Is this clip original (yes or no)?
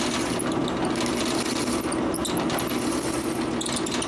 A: yes